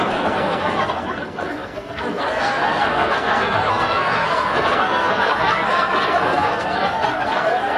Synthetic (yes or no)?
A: yes